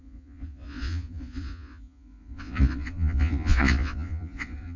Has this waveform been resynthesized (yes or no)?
yes